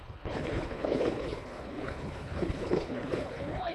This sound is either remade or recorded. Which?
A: remade